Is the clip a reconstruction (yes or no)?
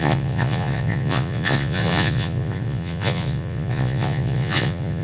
yes